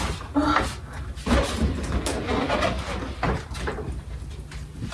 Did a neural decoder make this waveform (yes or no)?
no